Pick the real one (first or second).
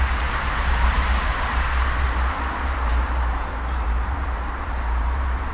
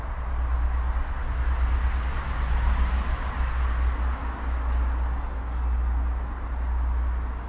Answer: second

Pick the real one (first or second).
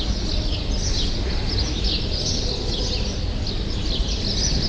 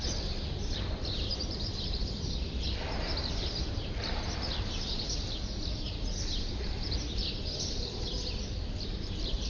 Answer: first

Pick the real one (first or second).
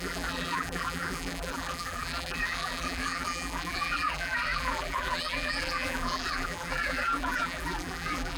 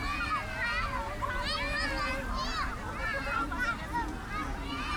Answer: second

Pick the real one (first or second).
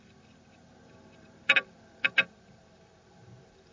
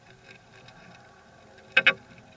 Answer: second